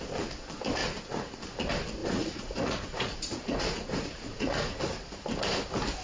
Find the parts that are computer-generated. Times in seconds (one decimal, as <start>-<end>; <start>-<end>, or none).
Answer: 0.8-1.4; 2.0-4.8